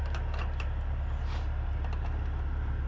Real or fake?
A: real